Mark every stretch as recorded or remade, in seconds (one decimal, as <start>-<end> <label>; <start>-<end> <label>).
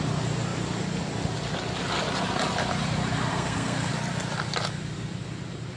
0.0-3.3 recorded; 3.3-3.9 remade; 3.9-5.8 recorded